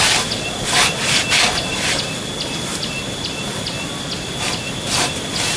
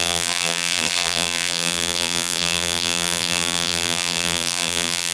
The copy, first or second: second